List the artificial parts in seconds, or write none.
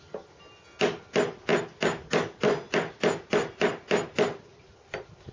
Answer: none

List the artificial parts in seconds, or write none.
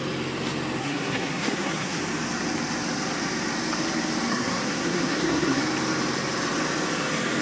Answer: 0.8-2.0; 4.3-5.6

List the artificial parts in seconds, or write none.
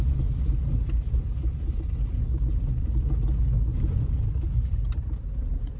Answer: 3.7-5.0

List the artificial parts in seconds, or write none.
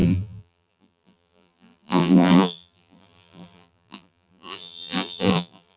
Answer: 0.0-5.8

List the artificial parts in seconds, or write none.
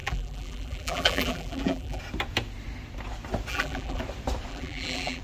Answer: 0.0-2.0; 3.5-4.0; 4.5-5.2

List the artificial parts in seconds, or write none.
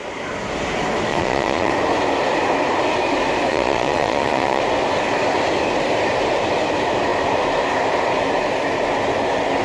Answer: 1.1-1.7; 3.5-4.6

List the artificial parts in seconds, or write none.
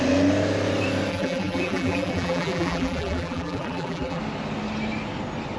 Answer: 1.1-4.2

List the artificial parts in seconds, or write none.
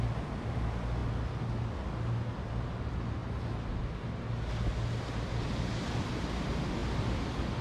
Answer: 6.8-7.6